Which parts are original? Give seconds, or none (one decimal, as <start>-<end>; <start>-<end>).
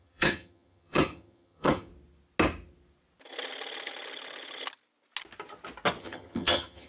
1.9-6.0